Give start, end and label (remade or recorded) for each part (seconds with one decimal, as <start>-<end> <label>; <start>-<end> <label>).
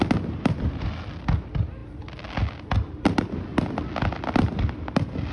0.0-5.3 recorded